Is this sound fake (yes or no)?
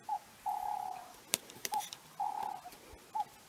no